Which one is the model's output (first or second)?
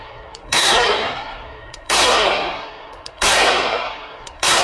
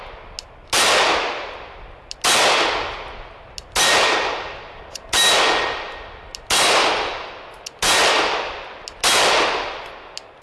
first